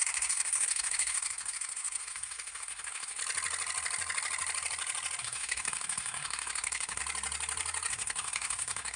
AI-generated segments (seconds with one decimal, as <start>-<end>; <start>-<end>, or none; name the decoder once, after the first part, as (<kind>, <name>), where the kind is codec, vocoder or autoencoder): 0.0-3.2 (codec, SNAC); 5.2-7.0; 7.9-9.0